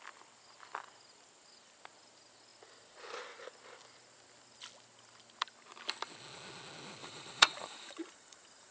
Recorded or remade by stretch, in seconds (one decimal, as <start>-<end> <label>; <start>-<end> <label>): 0.0-7.0 recorded; 7.0-8.7 remade